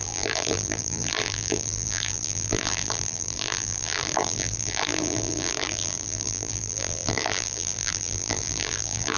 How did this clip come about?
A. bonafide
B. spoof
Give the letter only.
B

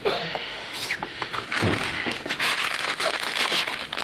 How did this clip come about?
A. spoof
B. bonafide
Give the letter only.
A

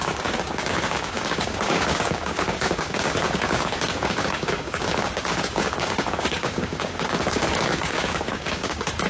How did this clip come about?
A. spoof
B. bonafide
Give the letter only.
A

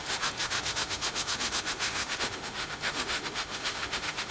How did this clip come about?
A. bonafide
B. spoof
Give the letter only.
B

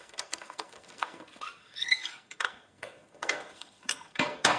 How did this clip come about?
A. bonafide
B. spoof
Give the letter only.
B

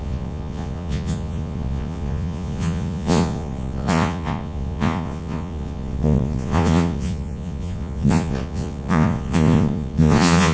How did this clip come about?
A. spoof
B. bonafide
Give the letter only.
A